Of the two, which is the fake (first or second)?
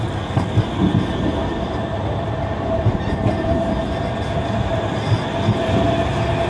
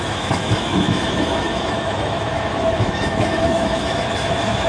second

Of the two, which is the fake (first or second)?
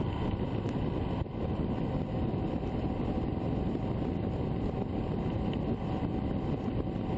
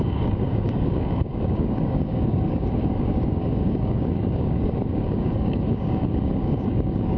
second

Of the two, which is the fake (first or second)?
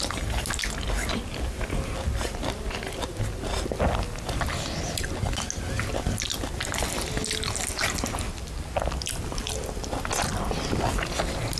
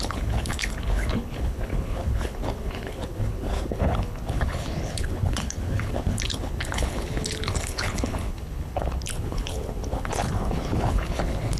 second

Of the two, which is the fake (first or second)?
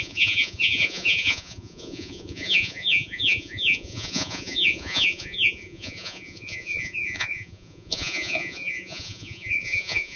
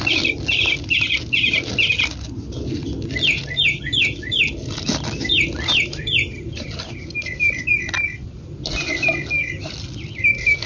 first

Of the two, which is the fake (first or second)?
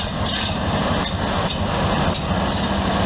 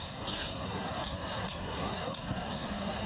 second